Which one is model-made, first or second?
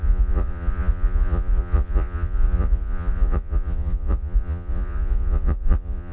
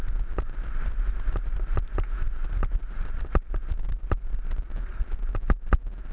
first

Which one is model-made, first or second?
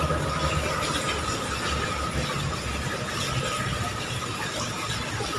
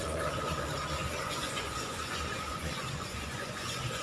second